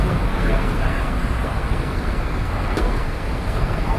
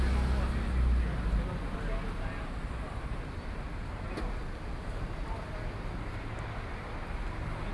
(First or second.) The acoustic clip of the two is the second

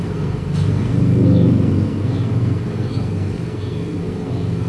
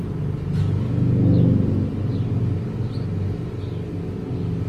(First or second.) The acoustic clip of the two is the second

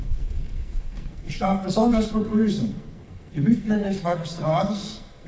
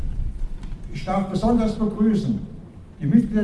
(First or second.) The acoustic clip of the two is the second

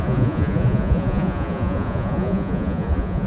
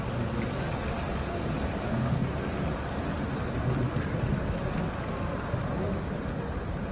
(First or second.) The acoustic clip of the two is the second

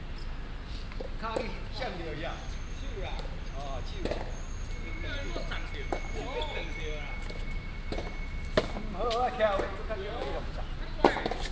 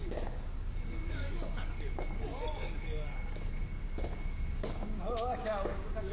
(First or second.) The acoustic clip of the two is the first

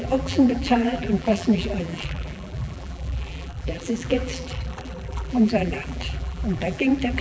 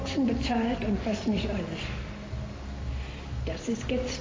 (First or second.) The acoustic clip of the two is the second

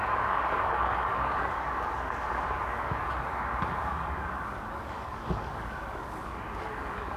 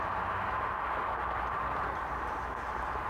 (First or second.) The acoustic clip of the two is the second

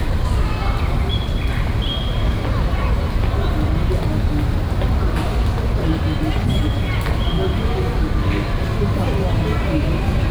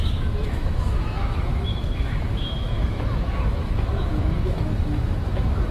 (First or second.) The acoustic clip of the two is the first